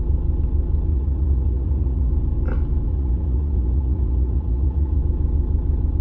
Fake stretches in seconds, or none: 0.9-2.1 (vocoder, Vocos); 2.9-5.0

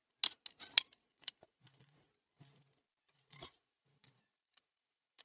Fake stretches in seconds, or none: 1.0-2.1 (vocoder, Vocos); 3.1-5.2

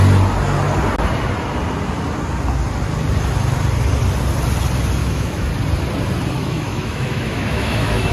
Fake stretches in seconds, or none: 5.0-5.5 (autoencoder, DAC-VAE); 6.4-8.1

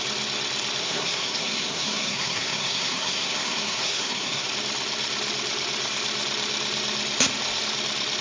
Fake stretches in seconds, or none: 0.8-4.5 (codec, SNAC)

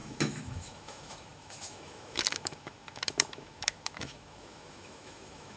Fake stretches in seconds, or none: 0.0-5.6 (autoencoder, DAC-VAE)

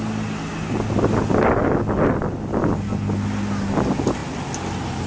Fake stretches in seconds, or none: none